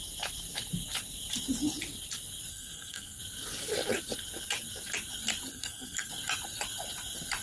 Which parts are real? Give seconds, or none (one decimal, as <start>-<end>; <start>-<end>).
0.0-2.5; 3.2-5.5; 6.1-7.4